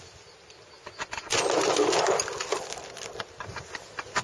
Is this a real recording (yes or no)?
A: yes